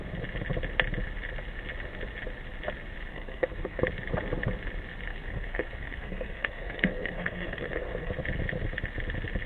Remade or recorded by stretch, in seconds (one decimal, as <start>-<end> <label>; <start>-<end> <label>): 0.0-3.1 recorded; 3.1-3.8 remade; 3.8-5.1 recorded; 5.1-8.1 remade; 8.1-9.5 recorded